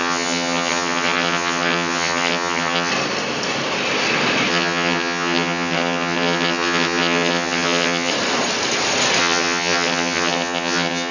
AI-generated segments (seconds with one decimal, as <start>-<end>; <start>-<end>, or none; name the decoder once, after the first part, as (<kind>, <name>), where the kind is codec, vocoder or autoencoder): 0.0-2.9 (vocoder, HiFi-GAN); 4.5-8.1; 9.2-11.1